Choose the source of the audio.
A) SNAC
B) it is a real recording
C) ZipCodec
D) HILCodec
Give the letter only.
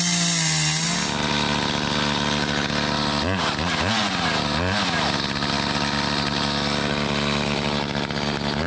B